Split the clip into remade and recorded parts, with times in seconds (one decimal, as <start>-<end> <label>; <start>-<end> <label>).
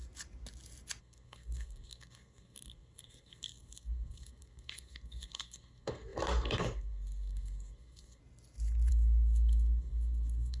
0.0-1.0 recorded; 1.0-8.2 remade; 8.2-8.9 recorded; 8.9-10.6 remade